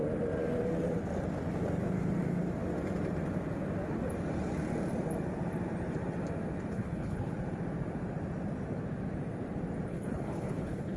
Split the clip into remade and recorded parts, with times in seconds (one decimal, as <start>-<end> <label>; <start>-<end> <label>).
0.0-6.7 recorded; 6.7-7.3 remade; 7.3-9.9 recorded; 9.9-11.0 remade